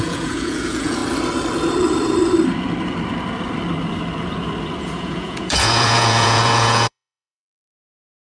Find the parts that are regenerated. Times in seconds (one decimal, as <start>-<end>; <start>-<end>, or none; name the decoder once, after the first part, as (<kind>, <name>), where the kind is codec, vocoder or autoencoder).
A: 0.0-1.0 (vocoder, Vocos); 4.8-8.2

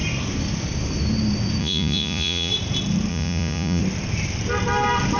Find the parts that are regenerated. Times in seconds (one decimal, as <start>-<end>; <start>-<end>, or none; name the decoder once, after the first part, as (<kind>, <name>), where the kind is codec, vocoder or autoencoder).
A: 1.6-2.5 (vocoder, Vocos); 3.1-3.8

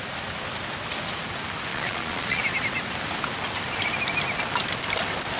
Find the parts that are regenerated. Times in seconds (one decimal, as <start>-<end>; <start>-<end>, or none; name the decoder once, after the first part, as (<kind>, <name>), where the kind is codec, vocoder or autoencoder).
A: 1.7-2.4 (vocoder, Vocos)

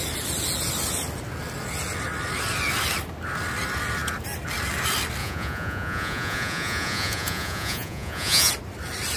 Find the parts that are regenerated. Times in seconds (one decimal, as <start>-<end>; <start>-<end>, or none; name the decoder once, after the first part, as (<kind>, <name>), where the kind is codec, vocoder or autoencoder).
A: 5.2-8.5 (vocoder, Vocos)

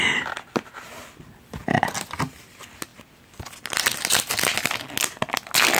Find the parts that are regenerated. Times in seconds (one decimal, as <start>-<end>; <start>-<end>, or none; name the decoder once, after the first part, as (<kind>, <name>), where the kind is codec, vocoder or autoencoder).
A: none

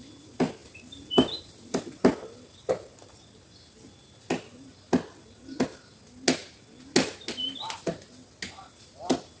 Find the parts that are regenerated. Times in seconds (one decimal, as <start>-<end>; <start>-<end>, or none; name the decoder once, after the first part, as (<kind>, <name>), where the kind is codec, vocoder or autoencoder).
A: none

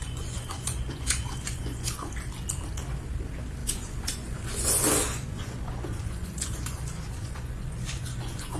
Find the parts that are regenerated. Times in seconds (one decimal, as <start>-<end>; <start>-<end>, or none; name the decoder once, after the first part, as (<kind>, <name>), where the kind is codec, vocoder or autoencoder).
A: 0.0-2.1 (vocoder, Vocos); 3.6-8.6

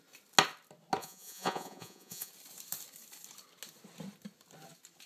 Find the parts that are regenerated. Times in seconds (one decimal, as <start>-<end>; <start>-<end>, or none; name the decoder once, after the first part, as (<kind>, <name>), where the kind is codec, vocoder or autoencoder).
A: 1.0-2.3 (vocoder, Vocos)